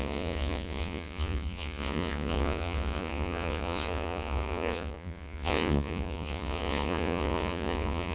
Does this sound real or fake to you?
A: fake